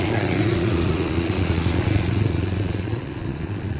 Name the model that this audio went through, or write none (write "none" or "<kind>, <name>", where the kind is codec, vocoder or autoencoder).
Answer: vocoder, Vocos